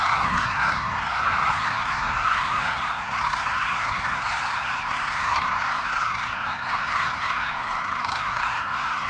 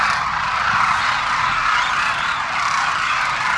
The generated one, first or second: first